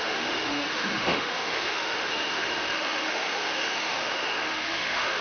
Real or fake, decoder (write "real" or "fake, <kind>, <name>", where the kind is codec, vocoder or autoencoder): fake, autoencoder, DAC-VAE